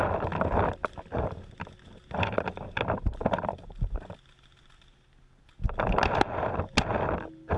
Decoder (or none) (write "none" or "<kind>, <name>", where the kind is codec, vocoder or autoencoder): none